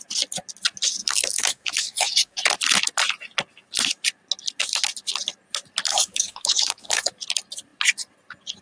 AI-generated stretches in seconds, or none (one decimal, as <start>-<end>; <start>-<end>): 1.0-2.4; 5.9-7.1